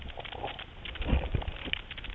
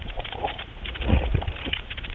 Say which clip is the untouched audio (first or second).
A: first